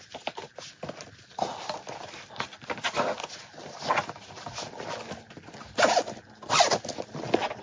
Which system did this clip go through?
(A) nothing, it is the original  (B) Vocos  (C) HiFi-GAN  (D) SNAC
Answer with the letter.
A